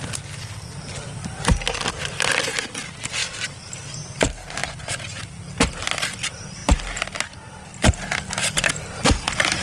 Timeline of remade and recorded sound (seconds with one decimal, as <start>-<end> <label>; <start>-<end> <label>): 0.0-3.2 recorded; 3.2-3.9 remade; 3.9-9.6 recorded